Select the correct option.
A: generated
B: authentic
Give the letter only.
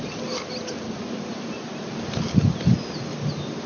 B